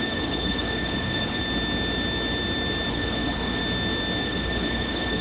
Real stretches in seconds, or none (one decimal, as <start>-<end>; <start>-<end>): 1.4-2.9; 3.6-4.2